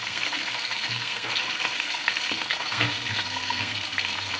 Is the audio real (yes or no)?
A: no